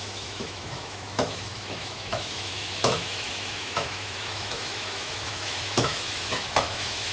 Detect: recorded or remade remade